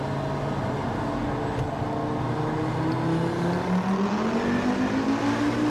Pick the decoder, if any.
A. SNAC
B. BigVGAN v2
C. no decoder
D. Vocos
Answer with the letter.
C